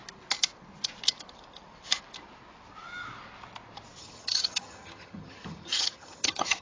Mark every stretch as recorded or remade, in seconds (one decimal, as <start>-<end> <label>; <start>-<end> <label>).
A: 0.0-4.0 recorded; 4.0-6.6 remade